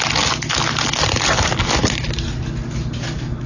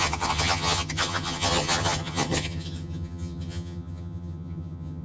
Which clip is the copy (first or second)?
second